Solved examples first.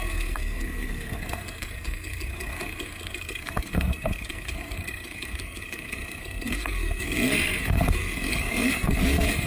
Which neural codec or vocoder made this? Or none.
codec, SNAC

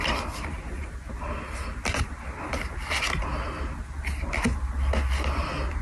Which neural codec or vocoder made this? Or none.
none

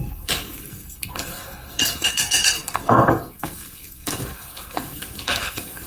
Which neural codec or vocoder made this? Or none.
codec, SNAC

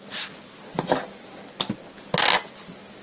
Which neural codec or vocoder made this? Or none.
none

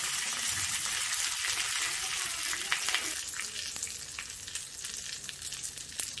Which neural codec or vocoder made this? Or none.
none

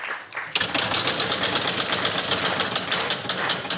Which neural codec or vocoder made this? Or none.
none